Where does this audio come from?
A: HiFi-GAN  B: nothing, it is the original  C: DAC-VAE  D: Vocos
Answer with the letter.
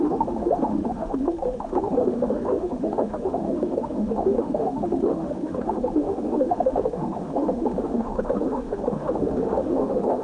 C